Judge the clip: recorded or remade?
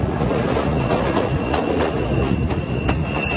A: remade